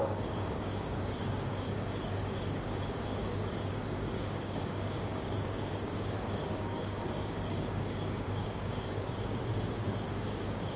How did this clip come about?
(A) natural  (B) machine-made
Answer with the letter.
B